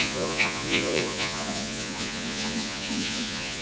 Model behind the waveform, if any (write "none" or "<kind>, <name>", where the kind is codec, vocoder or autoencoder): vocoder, Vocos